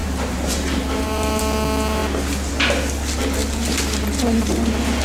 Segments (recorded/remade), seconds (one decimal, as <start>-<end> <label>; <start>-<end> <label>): 0.0-1.4 remade; 1.4-5.0 recorded